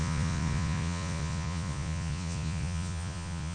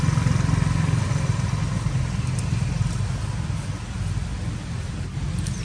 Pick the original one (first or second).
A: second